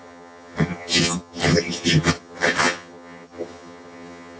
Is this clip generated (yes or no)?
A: yes